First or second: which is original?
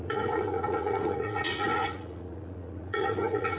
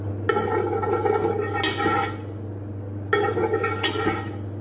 second